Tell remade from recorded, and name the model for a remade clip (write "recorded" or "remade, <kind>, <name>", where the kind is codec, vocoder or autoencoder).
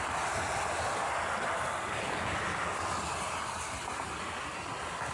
recorded